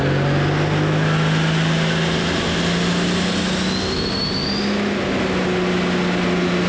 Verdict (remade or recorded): recorded